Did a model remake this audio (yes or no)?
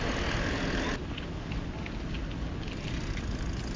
no